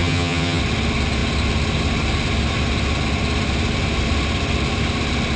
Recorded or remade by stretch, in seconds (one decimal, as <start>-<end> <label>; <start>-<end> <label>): 0.0-0.6 remade; 0.6-5.4 recorded